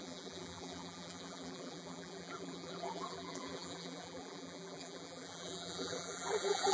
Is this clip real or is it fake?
fake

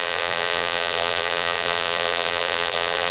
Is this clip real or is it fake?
fake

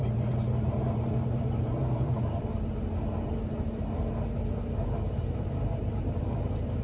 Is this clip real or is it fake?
fake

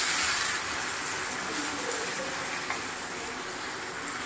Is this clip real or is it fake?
real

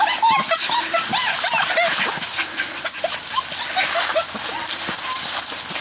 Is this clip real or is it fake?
real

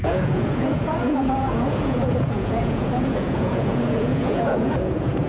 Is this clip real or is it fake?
fake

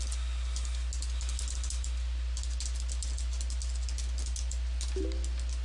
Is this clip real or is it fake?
real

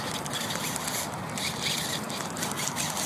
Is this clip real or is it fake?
real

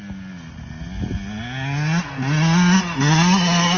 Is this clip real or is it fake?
real